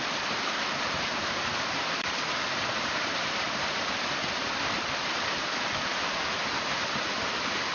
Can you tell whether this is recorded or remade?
remade